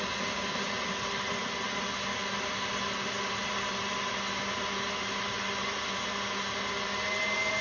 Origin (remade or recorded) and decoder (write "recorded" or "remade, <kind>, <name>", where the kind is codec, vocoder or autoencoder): recorded